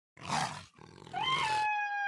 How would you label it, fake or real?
real